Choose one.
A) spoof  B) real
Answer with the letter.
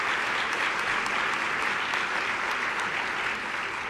B